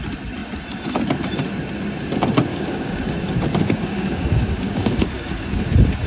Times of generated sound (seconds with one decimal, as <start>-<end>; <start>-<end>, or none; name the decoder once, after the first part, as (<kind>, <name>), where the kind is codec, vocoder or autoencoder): 2.5-3.0 (codec, DAC); 3.5-5.6